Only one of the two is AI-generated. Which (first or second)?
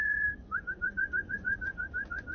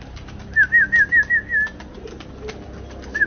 first